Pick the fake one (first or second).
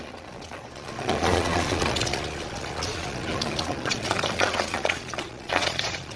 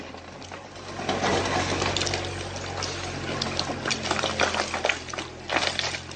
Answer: first